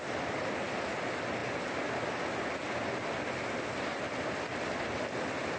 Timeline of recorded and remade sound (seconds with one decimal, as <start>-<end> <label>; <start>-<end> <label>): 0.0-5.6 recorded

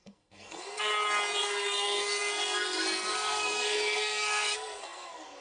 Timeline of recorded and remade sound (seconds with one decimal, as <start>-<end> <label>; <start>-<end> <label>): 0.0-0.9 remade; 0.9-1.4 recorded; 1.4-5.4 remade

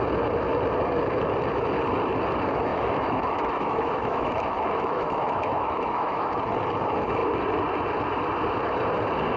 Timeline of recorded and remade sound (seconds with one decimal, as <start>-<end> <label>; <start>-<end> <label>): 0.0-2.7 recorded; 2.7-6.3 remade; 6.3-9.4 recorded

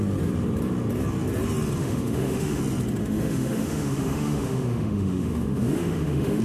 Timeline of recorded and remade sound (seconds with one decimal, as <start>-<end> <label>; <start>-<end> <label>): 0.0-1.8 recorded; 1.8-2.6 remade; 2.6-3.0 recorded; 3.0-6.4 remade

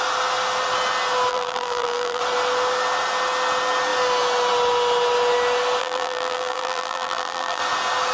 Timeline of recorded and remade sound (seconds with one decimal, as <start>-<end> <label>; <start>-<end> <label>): 0.0-1.3 recorded; 1.3-2.2 remade; 2.2-5.8 recorded; 5.8-7.6 remade; 7.6-8.1 recorded